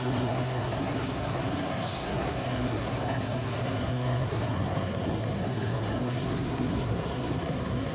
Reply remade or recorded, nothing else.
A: remade